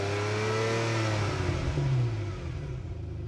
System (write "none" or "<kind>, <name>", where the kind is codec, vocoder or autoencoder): none